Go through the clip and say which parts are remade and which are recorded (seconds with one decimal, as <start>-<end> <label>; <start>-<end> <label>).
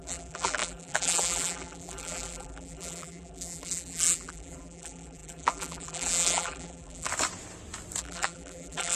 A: 0.0-7.1 remade; 7.1-8.0 recorded; 8.0-9.0 remade